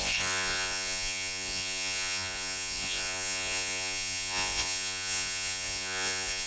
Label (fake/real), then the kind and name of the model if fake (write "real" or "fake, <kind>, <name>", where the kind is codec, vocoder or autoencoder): fake, vocoder, Vocos